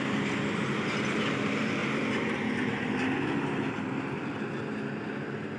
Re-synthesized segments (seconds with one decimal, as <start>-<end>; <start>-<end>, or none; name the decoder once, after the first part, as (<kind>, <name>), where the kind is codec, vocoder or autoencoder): none